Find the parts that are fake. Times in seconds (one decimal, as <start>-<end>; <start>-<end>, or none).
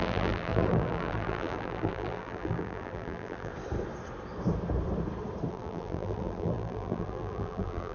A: 0.0-3.5; 5.5-7.9